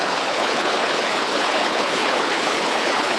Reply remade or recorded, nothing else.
remade